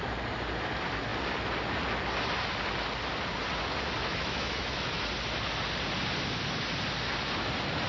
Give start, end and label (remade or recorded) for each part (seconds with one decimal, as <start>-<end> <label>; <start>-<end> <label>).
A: 0.0-4.0 recorded; 4.0-5.0 remade; 5.0-7.9 recorded

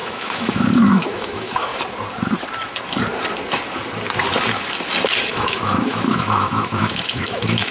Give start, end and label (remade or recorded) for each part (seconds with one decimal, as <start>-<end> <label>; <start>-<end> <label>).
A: 0.0-1.7 remade; 1.7-5.3 recorded; 5.3-7.7 remade

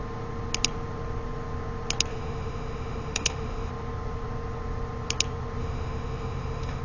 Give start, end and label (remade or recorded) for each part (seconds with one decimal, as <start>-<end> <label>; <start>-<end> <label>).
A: 0.0-2.1 recorded; 2.1-3.7 remade; 3.7-5.6 recorded; 5.6-6.8 remade

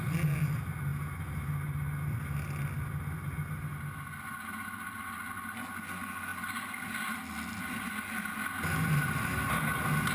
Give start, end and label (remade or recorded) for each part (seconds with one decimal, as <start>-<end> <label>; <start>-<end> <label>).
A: 0.0-10.1 recorded